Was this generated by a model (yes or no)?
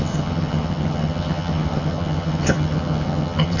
yes